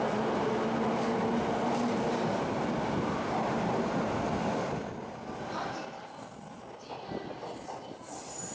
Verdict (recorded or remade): recorded